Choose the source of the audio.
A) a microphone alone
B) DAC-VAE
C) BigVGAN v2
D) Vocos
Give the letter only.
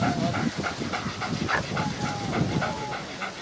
A